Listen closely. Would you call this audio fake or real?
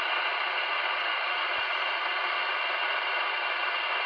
real